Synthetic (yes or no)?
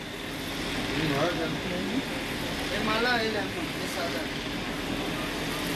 no